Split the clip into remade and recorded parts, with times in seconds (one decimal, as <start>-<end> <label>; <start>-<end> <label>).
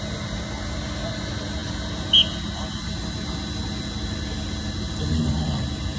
0.0-6.0 recorded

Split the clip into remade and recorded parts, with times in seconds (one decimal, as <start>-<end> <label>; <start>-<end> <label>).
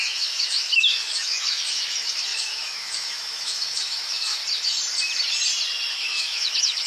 0.0-4.4 remade; 4.4-5.9 recorded; 5.9-6.9 remade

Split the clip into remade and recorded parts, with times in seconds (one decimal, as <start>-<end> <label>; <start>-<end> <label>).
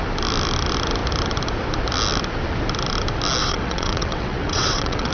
0.0-3.4 recorded; 3.4-5.1 remade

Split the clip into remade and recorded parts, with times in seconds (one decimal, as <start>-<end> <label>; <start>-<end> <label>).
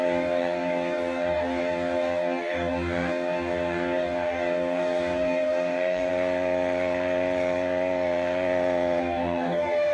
0.0-6.1 remade; 6.1-9.0 recorded; 9.0-9.9 remade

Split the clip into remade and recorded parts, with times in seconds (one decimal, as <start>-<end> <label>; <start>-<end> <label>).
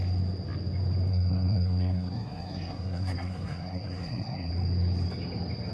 0.0-1.1 recorded; 1.1-4.5 remade; 4.5-5.7 recorded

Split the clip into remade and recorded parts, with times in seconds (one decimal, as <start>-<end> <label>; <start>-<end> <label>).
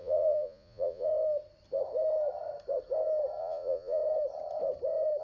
0.0-1.1 remade; 1.1-3.4 recorded; 3.4-4.0 remade; 4.0-5.2 recorded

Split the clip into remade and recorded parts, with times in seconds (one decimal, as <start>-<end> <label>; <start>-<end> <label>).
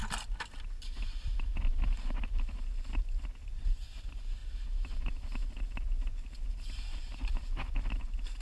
0.0-8.4 recorded